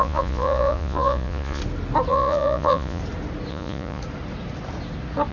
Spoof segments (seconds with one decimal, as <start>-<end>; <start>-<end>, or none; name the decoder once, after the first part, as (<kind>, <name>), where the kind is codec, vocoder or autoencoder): 0.0-1.6 (vocoder, Vocos); 2.1-3.0; 3.5-4.0